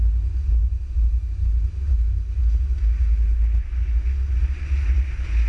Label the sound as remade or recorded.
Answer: recorded